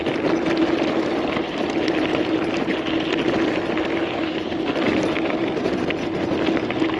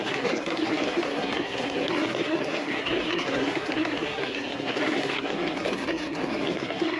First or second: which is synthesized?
second